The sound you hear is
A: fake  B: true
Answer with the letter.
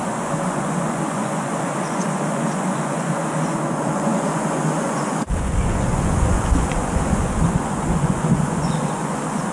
A